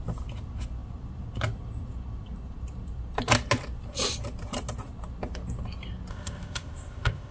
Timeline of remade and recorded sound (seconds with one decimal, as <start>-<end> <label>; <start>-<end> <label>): 0.0-6.1 recorded; 6.1-7.3 remade